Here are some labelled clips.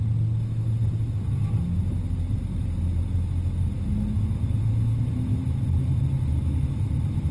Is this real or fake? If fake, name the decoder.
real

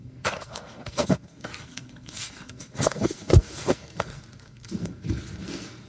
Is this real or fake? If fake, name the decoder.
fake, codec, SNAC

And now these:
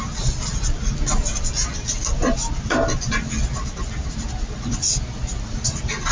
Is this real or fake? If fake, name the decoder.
real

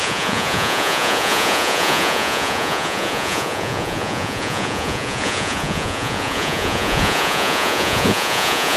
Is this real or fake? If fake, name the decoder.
fake, vocoder, Vocos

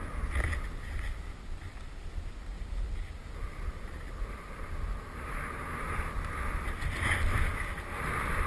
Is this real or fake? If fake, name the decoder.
real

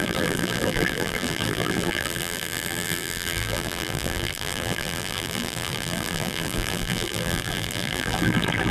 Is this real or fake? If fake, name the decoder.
fake, vocoder, BigVGAN v2